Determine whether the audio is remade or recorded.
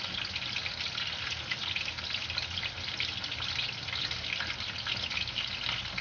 recorded